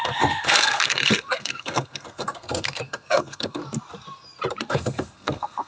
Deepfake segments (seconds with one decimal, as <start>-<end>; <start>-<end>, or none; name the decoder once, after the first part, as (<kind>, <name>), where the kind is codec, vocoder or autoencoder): 0.0-3.6 (codec, SNAC); 4.7-5.7